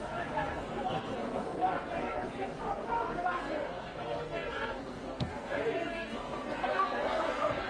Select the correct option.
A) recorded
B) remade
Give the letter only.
B